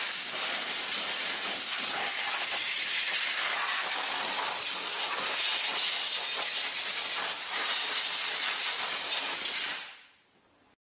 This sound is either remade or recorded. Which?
recorded